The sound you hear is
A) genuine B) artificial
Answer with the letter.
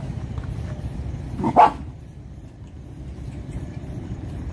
B